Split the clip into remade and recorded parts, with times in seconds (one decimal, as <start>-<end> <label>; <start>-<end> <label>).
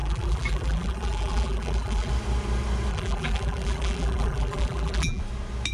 0.0-2.1 remade; 2.1-2.9 recorded; 2.9-5.2 remade; 5.2-5.7 recorded